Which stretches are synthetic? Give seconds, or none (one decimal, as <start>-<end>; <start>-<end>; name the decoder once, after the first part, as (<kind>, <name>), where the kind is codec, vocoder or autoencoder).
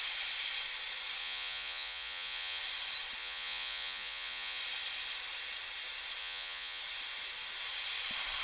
1.2-2.6 (vocoder, Vocos); 3.2-4.6; 6.2-6.8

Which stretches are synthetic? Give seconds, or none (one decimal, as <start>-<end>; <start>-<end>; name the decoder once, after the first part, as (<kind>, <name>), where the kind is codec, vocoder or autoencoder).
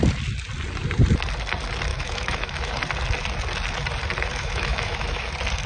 1.9-2.7 (autoencoder, DAC-VAE); 4.3-5.3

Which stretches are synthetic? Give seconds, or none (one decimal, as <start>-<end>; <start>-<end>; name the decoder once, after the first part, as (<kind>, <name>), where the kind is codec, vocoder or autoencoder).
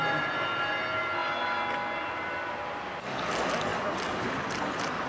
none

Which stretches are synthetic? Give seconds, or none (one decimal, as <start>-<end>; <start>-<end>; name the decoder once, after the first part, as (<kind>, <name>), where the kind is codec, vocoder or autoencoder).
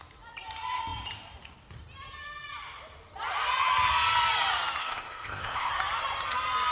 4.8-5.7 (codec, ZipCodec)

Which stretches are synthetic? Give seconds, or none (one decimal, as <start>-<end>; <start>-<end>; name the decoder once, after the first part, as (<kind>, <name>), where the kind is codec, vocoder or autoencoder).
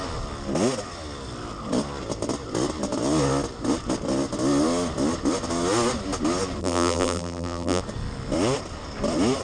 6.6-7.8 (vocoder, BigVGAN v2)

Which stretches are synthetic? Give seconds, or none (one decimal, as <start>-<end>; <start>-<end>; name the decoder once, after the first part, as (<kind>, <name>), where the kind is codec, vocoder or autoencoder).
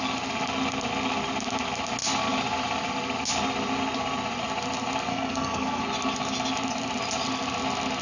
5.1-5.8 (codec, SNAC)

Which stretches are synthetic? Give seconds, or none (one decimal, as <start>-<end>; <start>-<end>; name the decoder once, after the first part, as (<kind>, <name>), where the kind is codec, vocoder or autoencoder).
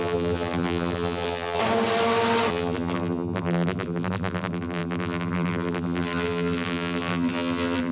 0.0-1.6 (vocoder, BigVGAN v2); 2.5-7.9